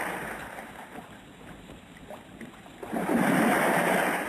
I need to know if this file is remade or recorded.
remade